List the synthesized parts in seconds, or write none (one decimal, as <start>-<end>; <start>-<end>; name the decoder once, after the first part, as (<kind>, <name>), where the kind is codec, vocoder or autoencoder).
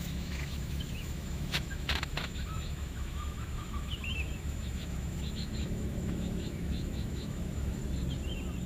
0.0-7.8 (autoencoder, DAC-VAE)